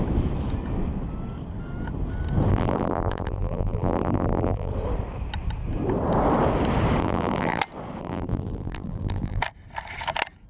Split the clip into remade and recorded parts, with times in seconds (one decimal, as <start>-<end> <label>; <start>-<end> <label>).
0.0-2.5 recorded; 2.5-4.7 remade; 4.7-7.0 recorded; 7.0-7.6 remade; 7.6-8.0 recorded; 8.0-9.4 remade; 9.4-10.5 recorded